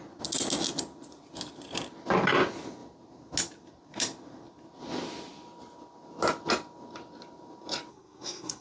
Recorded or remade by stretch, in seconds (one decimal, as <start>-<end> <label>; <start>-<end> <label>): 0.0-7.9 recorded; 7.9-8.6 remade